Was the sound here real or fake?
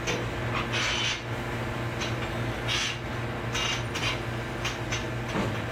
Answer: real